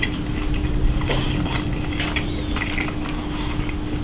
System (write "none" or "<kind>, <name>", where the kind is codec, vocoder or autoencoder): none